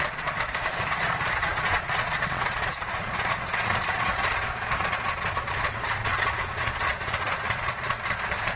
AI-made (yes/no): yes